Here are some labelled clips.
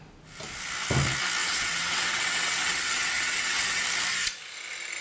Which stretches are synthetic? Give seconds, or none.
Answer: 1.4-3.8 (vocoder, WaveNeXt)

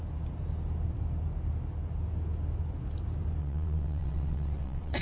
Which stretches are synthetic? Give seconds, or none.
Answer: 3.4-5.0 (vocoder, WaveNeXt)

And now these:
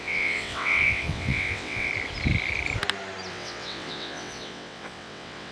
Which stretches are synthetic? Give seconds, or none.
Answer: 0.0-1.9 (vocoder, WaveNeXt); 3.3-5.5

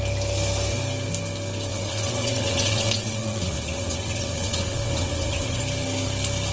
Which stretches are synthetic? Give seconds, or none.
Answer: 1.7-5.6 (vocoder, WaveNeXt)

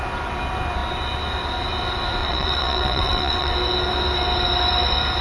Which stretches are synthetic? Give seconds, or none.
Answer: 2.2-3.5 (vocoder, WaveNeXt)

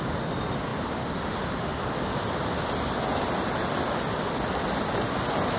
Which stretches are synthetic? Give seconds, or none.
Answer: none